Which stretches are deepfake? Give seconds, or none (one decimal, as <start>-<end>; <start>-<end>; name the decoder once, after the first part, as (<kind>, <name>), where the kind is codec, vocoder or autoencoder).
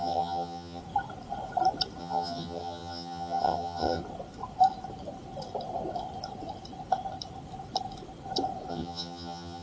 0.0-0.8 (vocoder, HiFi-GAN); 2.0-4.0; 8.7-9.6